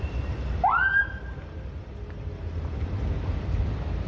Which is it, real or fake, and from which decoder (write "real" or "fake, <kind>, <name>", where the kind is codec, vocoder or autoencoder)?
real